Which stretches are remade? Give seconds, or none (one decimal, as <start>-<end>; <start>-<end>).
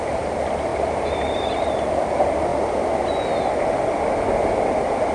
0.7-1.7